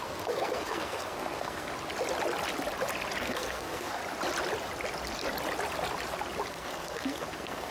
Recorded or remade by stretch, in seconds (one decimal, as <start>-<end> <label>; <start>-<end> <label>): 0.0-1.7 remade; 1.7-3.2 recorded; 3.2-4.0 remade; 4.0-6.5 recorded; 6.5-7.7 remade